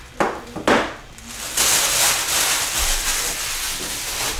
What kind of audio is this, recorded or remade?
recorded